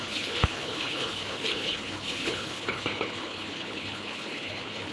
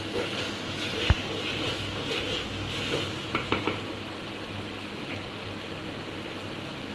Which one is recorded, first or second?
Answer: second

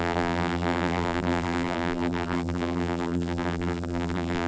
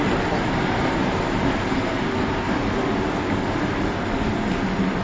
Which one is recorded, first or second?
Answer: second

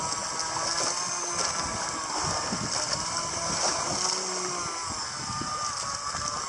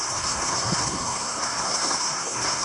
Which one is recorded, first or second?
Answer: first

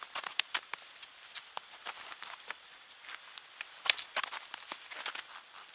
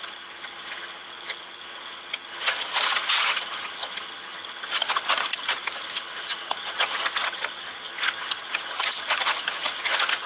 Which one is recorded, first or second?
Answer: first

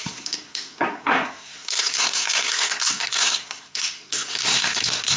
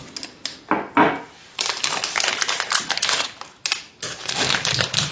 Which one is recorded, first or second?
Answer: second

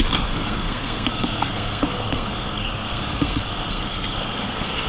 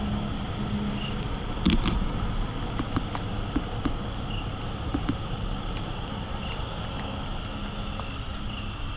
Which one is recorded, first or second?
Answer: second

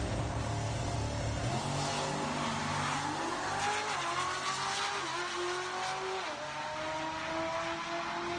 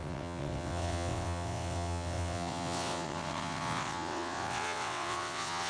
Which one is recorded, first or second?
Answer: first